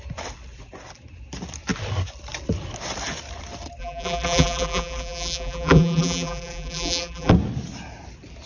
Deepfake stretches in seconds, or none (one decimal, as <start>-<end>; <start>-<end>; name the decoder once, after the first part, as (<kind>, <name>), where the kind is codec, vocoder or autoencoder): 3.8-7.3 (vocoder, BigVGAN v2)